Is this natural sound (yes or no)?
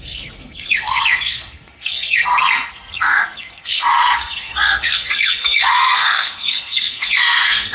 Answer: no